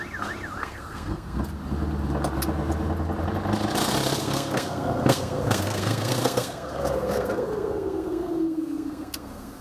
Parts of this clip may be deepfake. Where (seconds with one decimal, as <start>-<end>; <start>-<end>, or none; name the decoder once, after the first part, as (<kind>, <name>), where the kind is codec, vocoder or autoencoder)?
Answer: 0.6-1.4 (codec, SNAC); 4.2-9.6